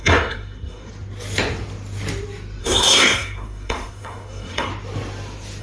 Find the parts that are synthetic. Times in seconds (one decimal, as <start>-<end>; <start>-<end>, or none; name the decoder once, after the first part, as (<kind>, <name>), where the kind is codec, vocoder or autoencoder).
0.0-0.9 (codec, SNAC); 2.6-4.7